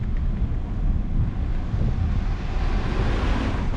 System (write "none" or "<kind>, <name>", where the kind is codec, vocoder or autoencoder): none